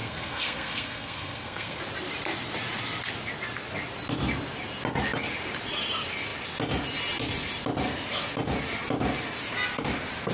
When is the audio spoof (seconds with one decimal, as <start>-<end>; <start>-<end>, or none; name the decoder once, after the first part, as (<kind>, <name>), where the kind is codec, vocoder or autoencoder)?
0.0-1.8 (codec, SNAC)